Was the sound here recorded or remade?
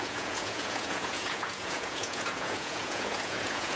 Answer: remade